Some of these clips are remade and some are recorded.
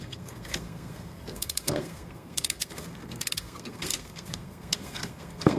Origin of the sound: remade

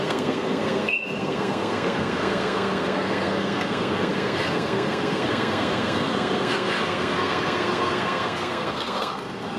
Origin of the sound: remade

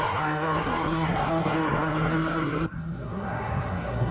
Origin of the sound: remade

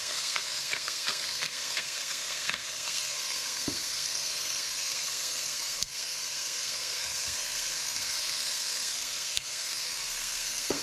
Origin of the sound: remade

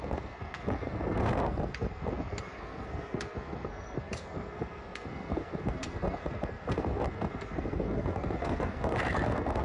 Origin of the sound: remade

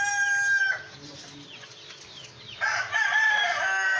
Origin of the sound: recorded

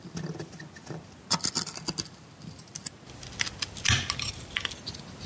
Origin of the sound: recorded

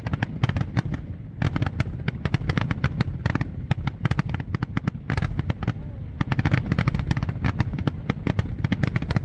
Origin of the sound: recorded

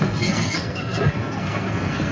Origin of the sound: remade